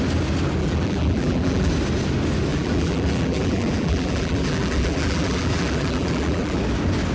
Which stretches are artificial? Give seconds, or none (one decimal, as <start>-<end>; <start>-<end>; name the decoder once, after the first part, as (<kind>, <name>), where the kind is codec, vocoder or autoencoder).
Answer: 0.6-1.7 (vocoder, BigVGAN v2); 2.5-6.6